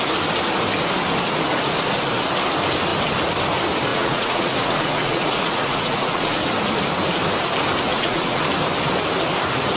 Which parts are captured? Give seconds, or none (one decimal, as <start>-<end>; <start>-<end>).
0.0-3.9; 6.4-7.9; 8.4-9.8